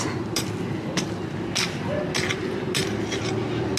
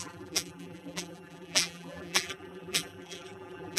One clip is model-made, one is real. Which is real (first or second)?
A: first